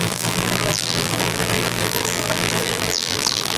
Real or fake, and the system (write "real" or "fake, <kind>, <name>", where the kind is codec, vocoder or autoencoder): fake, vocoder, BigVGAN v2